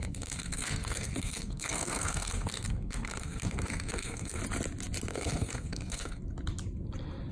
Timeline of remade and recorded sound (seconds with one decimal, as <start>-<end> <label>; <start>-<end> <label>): 0.0-4.4 remade; 4.4-5.1 recorded; 5.1-6.2 remade; 6.2-7.3 recorded